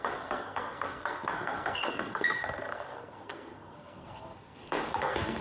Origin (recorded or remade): remade